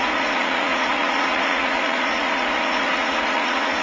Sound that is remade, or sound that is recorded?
remade